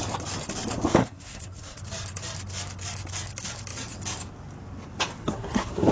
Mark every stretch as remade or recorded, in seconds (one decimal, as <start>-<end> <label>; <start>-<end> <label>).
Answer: 0.0-1.0 recorded; 1.0-1.8 remade; 1.8-5.2 recorded; 5.2-5.9 remade